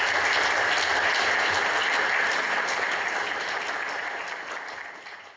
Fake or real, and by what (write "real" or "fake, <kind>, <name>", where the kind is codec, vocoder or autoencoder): real